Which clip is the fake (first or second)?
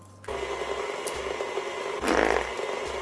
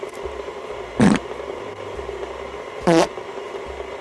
second